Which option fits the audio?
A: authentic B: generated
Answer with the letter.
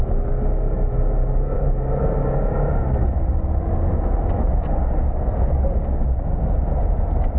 A